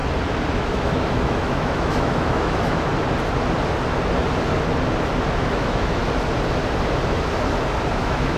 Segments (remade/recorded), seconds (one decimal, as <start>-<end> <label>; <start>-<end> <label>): 0.0-0.5 recorded; 0.5-2.9 remade; 2.9-5.4 recorded; 5.4-6.0 remade; 6.0-7.9 recorded; 7.9-8.4 remade